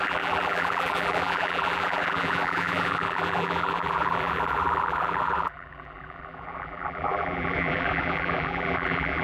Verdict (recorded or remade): remade